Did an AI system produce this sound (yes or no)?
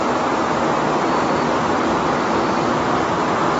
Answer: no